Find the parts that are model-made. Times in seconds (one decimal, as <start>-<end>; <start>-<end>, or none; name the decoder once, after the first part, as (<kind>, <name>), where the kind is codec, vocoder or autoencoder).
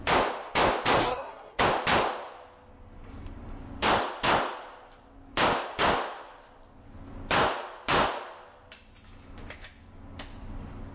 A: 1.0-1.6 (codec, SNAC)